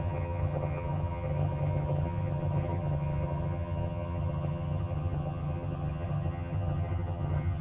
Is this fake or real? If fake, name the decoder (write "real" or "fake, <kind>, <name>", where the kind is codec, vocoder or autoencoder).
fake, vocoder, HiFi-GAN